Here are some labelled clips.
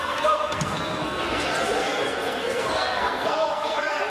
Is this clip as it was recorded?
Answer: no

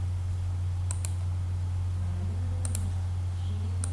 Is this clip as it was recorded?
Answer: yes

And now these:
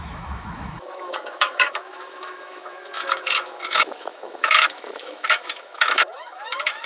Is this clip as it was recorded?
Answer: no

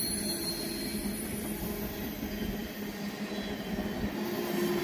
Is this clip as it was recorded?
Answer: yes